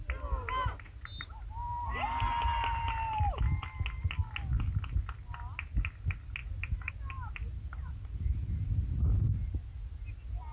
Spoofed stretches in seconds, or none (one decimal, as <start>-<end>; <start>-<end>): none